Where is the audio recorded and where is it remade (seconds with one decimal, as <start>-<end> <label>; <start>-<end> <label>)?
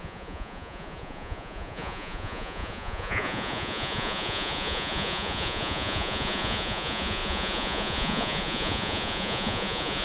0.0-10.0 remade